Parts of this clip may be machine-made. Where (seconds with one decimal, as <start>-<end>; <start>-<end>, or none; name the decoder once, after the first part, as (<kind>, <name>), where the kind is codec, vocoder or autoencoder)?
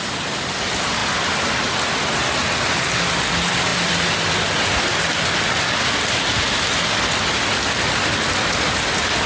none